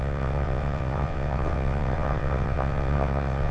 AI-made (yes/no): yes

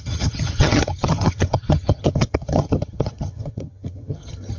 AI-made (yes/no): yes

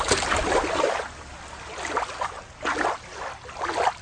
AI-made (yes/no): no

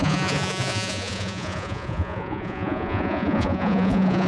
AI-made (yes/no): yes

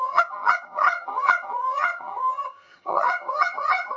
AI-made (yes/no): yes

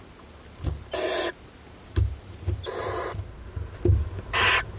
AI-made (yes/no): no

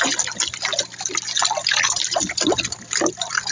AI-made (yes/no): no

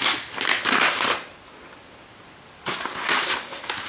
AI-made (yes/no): no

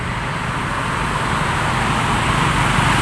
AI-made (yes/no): no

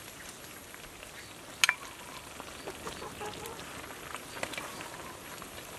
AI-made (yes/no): no